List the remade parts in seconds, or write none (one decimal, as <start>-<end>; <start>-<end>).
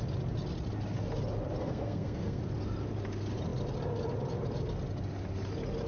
1.6-2.4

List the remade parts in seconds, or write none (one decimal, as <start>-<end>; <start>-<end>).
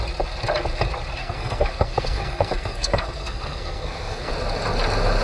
1.2-4.3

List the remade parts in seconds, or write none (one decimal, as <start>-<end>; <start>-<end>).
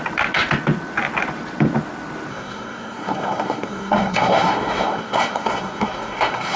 2.3-6.6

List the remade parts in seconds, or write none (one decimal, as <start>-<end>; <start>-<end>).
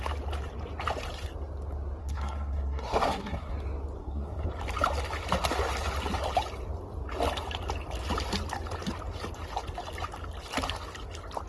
2.0-3.5; 4.0-4.5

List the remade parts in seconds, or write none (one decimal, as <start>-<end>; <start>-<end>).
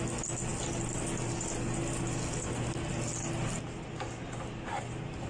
none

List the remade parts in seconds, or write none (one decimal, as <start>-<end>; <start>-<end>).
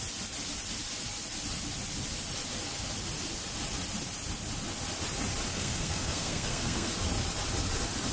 5.5-6.9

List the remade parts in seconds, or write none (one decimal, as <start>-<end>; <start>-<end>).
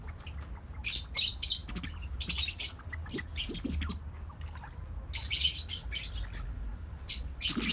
none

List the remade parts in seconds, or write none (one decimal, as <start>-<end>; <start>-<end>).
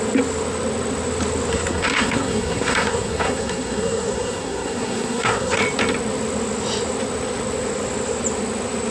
1.5-5.6